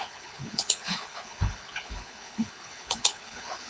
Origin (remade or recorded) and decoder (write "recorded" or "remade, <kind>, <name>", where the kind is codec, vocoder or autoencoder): remade, codec, HILCodec